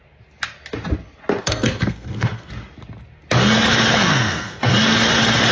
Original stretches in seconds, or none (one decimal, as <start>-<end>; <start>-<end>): 0.0-1.4; 2.5-4.0; 4.7-5.5